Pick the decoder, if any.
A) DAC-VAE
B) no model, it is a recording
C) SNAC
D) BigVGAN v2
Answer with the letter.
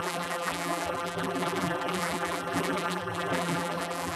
D